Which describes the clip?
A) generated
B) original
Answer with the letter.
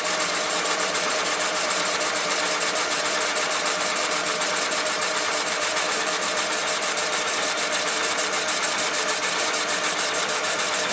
A